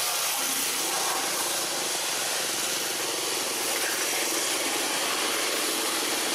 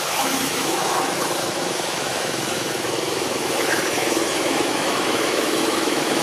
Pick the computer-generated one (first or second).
second